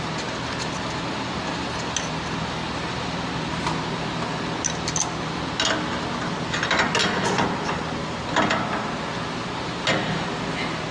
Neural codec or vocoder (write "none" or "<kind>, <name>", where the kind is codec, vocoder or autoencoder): none